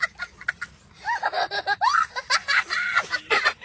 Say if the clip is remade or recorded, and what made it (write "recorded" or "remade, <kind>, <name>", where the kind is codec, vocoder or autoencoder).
recorded